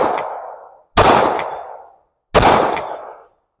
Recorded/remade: recorded